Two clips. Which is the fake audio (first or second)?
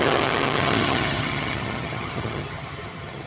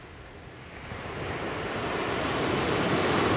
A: first